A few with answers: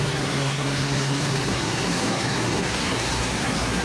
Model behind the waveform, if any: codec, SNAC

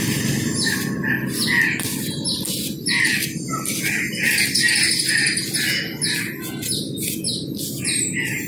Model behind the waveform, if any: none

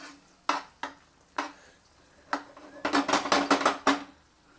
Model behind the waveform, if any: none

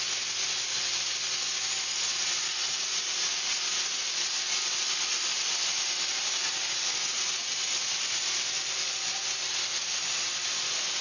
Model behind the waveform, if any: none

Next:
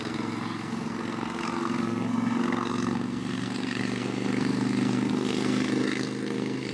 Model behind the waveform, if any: codec, SNAC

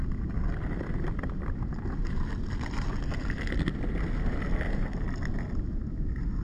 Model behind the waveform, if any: none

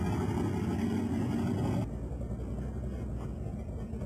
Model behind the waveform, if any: none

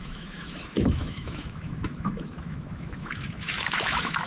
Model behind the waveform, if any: autoencoder, DAC-VAE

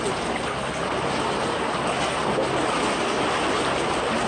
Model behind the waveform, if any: none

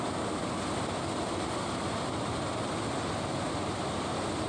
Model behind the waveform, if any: none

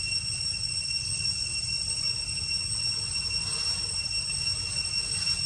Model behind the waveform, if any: none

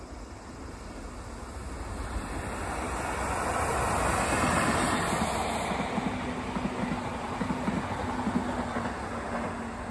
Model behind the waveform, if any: none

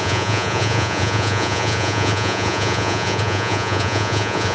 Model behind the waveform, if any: vocoder, Vocos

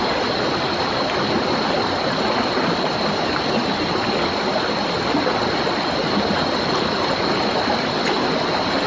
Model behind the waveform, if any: none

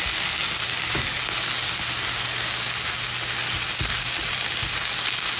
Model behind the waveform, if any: none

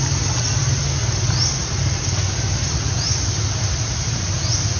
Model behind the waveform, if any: none